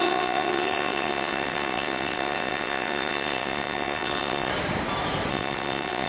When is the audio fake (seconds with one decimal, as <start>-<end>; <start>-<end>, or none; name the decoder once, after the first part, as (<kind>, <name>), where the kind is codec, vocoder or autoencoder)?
0.0-4.5 (vocoder, WaveNeXt); 5.3-6.1